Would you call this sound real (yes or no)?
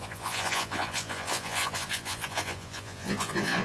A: no